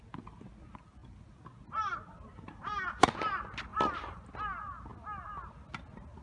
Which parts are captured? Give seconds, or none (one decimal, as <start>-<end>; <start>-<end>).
0.0-3.7; 4.2-6.2